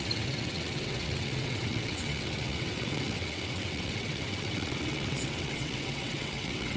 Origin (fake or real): fake